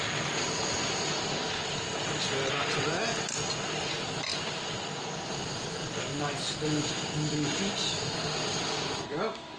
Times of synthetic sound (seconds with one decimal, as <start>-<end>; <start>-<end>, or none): none